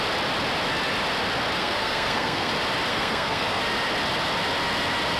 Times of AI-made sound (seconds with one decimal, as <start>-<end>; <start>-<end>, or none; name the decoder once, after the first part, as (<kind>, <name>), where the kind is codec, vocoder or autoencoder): 1.6-2.5 (codec, SNAC); 2.9-3.6